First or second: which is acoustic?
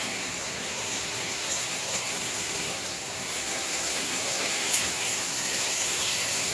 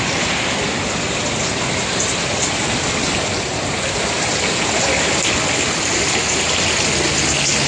second